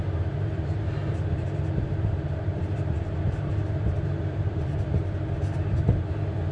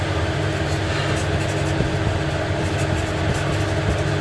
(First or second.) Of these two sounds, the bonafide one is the second